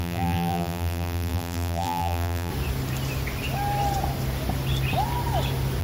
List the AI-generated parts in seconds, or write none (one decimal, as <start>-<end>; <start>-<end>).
0.0-2.5